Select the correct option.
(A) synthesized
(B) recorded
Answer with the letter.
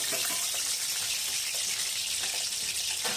B